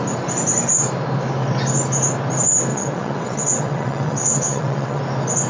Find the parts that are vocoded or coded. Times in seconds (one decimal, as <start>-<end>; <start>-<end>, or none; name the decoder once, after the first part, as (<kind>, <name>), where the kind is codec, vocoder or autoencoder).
2.7-5.0 (vocoder, WaveNeXt)